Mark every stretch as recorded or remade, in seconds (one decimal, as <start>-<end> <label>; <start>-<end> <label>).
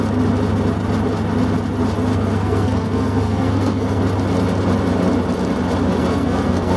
0.0-2.1 recorded; 2.1-4.0 remade; 4.0-5.9 recorded; 5.9-6.8 remade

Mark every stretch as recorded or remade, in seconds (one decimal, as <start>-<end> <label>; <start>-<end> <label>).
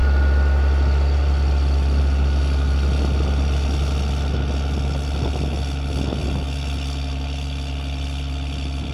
0.0-8.9 recorded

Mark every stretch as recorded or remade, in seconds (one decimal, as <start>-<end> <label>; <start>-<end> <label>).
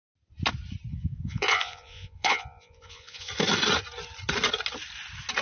0.0-0.9 recorded; 0.9-3.3 remade; 3.3-5.4 recorded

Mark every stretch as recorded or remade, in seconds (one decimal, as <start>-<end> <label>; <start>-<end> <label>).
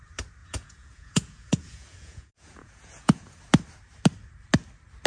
0.0-0.4 recorded; 0.4-3.4 remade; 3.4-5.1 recorded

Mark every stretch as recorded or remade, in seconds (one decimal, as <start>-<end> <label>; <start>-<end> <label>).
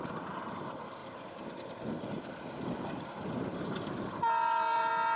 0.0-1.0 remade; 1.0-4.1 recorded; 4.1-5.2 remade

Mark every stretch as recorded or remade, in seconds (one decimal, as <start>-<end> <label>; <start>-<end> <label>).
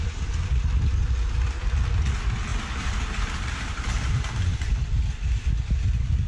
0.0-2.5 recorded; 2.5-4.7 remade; 4.7-6.3 recorded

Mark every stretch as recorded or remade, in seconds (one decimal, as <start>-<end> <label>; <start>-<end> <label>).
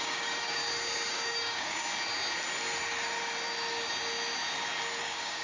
0.0-0.6 remade; 0.6-1.1 recorded; 1.1-1.8 remade; 1.8-5.0 recorded; 5.0-5.4 remade